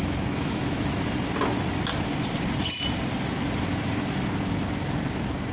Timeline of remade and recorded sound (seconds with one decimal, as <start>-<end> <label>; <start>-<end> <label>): 0.0-1.0 remade; 1.0-5.5 recorded